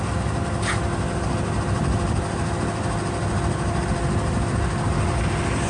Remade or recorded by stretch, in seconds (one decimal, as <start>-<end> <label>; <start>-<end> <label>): 0.0-5.7 recorded